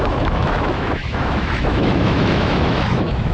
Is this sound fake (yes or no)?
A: yes